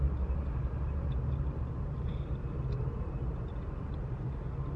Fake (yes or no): no